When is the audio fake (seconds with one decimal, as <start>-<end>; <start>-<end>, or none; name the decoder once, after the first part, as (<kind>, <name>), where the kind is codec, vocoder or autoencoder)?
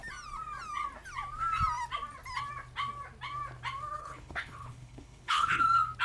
4.0-5.6 (codec, HILCodec)